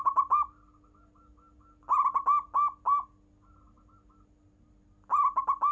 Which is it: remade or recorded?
recorded